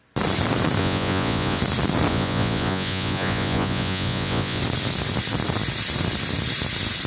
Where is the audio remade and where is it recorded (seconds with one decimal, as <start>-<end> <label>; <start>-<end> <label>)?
0.0-0.8 recorded; 0.8-1.6 remade; 1.6-2.1 recorded; 2.1-4.6 remade; 4.6-7.1 recorded